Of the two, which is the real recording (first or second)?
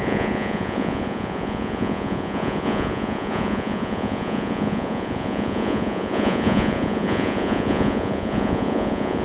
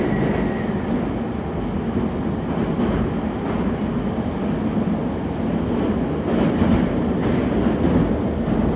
second